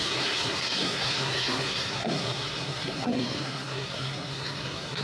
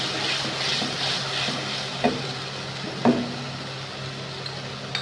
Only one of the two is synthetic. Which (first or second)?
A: first